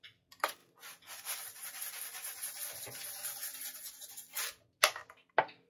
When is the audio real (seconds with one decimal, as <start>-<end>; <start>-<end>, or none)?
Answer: 0.0-5.7